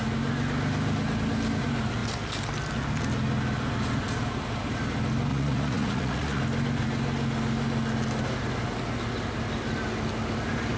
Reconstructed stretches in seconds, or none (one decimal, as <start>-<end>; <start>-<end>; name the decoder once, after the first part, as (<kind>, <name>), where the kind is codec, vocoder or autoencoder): 5.3-6.4 (vocoder, Vocos)